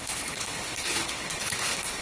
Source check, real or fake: fake